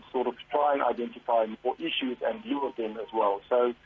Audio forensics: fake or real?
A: real